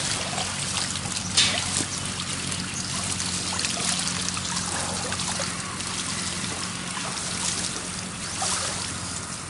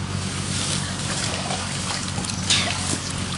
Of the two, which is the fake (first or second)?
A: second